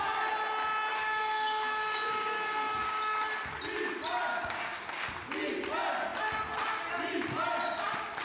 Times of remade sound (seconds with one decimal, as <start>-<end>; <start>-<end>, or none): 0.9-3.0; 4.3-5.1

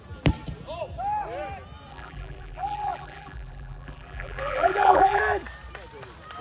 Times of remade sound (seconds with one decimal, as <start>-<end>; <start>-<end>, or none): 1.9-5.2

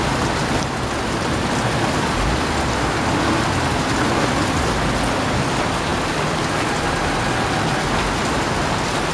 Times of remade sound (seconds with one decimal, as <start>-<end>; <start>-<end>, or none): none

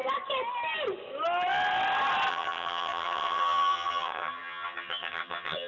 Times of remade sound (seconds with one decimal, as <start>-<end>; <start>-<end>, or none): 2.3-5.7

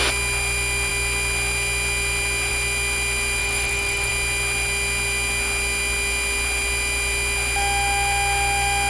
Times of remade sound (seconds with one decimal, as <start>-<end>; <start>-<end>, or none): 3.4-4.1

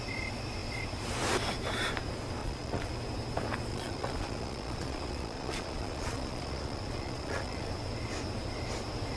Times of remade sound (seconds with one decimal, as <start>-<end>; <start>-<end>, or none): 2.4-2.9; 3.7-7.7

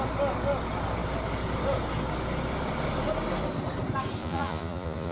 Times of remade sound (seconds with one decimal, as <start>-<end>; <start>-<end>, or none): 4.2-5.1